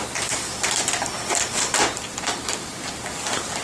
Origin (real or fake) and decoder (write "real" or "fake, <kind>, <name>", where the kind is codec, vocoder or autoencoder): real